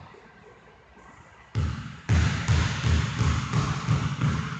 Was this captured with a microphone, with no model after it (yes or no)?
yes